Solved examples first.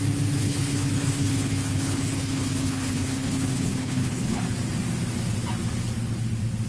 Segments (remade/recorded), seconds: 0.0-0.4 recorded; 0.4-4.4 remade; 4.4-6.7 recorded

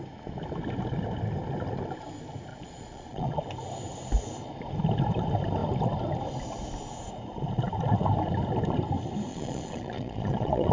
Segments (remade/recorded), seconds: 0.0-2.5 recorded; 2.5-3.4 remade; 3.4-9.3 recorded; 9.3-10.7 remade

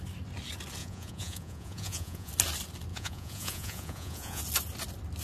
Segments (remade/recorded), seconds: 0.0-0.8 recorded; 0.8-2.3 remade; 2.3-2.9 recorded; 2.9-4.4 remade; 4.4-5.2 recorded

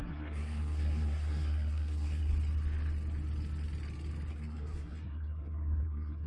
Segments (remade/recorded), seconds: 0.0-2.3 remade; 2.3-4.3 recorded; 4.3-6.3 remade

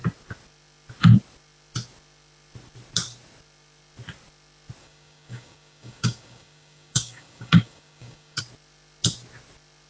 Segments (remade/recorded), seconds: 0.0-4.8 recorded; 4.8-8.4 remade; 8.4-9.9 recorded

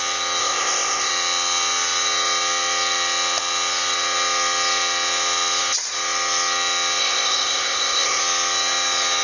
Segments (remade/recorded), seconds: 0.0-0.4 recorded; 0.4-1.1 remade; 1.1-7.0 recorded; 7.0-8.2 remade; 8.2-9.2 recorded

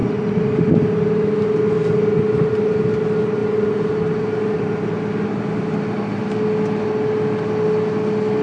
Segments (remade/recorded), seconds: 0.0-8.4 recorded